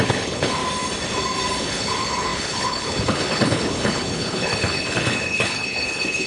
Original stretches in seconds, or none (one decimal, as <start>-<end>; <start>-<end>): 0.6-1.6